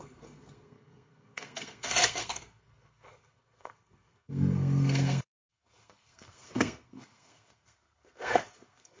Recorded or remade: remade